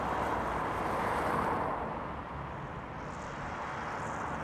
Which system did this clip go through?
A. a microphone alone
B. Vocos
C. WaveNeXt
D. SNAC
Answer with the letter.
A